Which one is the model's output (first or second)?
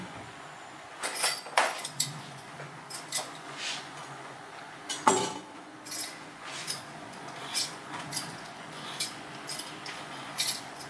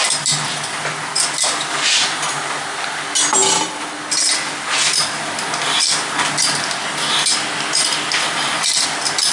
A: first